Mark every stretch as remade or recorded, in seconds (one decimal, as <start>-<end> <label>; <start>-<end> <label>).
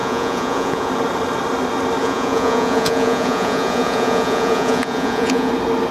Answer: 0.0-0.9 remade; 0.9-2.0 recorded; 2.0-5.5 remade; 5.5-5.9 recorded